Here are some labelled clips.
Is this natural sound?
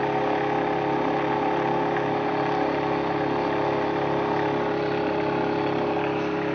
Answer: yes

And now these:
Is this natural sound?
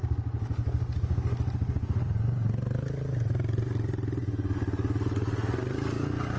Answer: yes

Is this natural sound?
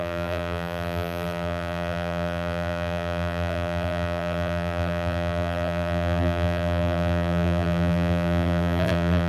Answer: no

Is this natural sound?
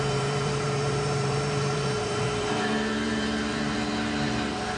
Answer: no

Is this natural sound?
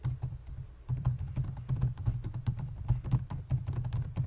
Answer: no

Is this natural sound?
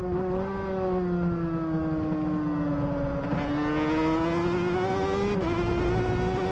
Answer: yes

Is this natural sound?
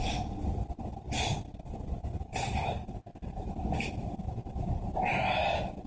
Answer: yes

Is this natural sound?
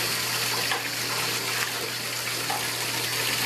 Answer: yes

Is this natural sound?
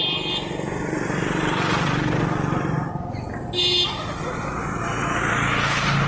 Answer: yes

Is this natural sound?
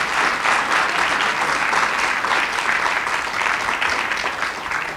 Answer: yes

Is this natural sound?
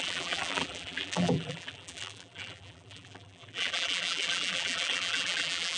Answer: no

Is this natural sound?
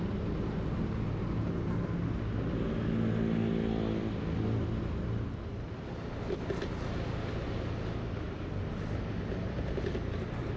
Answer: yes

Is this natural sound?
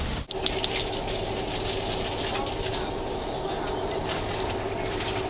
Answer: yes